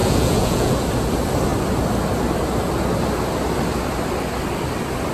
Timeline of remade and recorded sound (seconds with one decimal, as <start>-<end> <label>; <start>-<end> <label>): 0.0-0.7 remade; 0.7-5.1 recorded